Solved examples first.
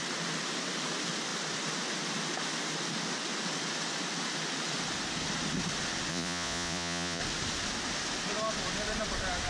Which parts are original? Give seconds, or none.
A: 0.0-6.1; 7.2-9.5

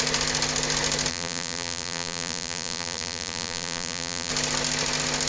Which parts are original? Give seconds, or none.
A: 0.0-1.1; 4.3-5.3

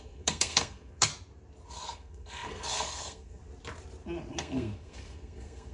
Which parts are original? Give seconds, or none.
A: 1.1-1.7; 3.4-4.3

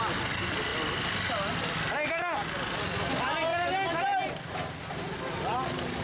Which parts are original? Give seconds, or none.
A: 0.0-6.0

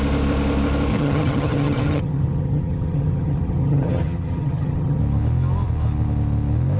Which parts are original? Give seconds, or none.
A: 0.0-0.9; 5.0-6.8

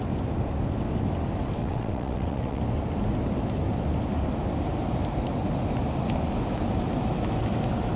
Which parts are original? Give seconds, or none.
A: 0.0-1.6; 2.6-8.0